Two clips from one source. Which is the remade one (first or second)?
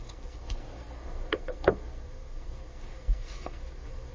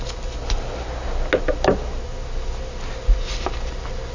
first